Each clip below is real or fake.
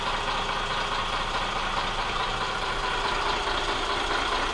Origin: real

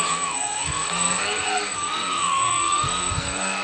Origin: fake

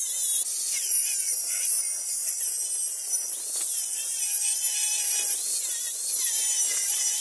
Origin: real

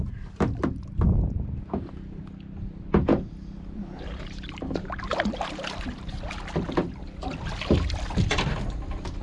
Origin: real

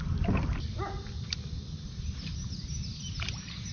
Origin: real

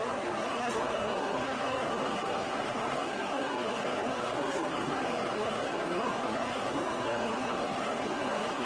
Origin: fake